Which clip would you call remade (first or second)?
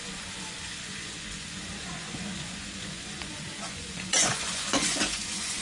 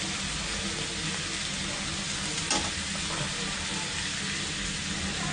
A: first